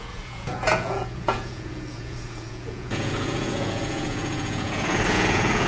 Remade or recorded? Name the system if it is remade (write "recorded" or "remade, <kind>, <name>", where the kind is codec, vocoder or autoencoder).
remade, vocoder, Vocos